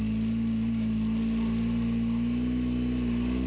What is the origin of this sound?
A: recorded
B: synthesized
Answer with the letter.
A